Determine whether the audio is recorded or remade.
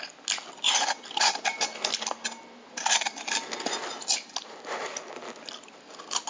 recorded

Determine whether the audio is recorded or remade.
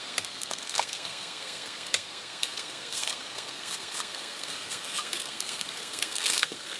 remade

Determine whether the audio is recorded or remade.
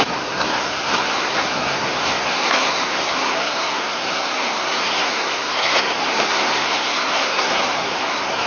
remade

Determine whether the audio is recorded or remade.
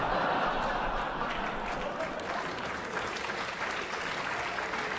recorded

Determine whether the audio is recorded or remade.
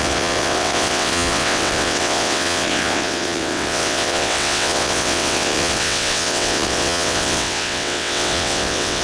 remade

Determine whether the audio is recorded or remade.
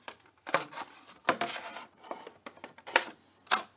remade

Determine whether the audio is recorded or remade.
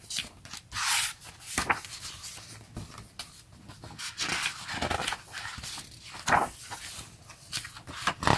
recorded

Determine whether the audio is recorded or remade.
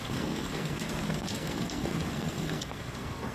remade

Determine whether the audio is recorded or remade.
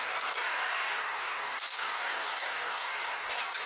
remade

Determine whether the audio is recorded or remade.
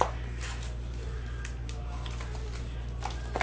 recorded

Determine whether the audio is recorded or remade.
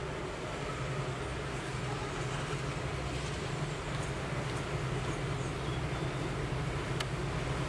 recorded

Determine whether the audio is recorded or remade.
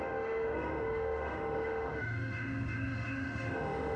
remade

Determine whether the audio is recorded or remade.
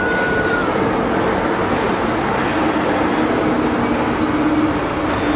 recorded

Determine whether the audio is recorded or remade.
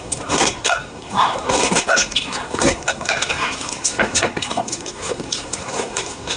remade